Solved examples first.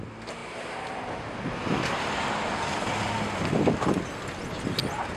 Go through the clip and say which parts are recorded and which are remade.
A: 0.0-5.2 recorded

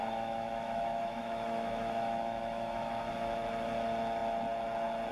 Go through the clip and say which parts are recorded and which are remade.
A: 0.0-3.1 remade; 3.1-5.1 recorded

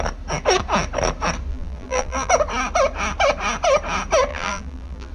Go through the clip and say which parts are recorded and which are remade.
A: 0.0-1.5 recorded; 1.5-2.3 remade; 2.3-4.3 recorded; 4.3-5.1 remade

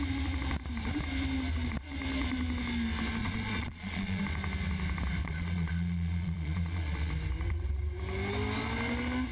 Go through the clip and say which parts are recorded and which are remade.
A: 0.0-3.2 recorded; 3.2-4.2 remade; 4.2-5.2 recorded; 5.2-7.1 remade; 7.1-9.3 recorded

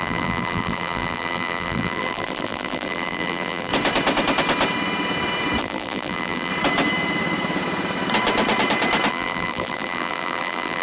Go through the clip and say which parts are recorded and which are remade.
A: 0.0-3.7 remade; 3.7-5.6 recorded; 5.6-6.5 remade; 6.5-9.1 recorded; 9.1-10.8 remade

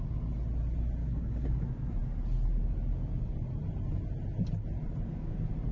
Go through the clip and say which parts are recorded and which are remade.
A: 0.0-1.0 recorded; 1.0-1.6 remade; 1.6-5.7 recorded

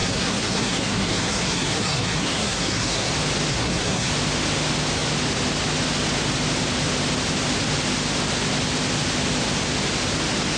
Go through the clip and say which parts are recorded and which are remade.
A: 0.0-3.1 remade; 3.1-3.5 recorded; 3.5-4.1 remade; 4.1-10.6 recorded

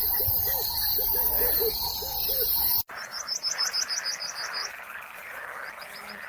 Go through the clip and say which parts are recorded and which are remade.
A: 0.0-3.8 remade; 3.8-4.6 recorded; 4.6-5.4 remade; 5.4-6.3 recorded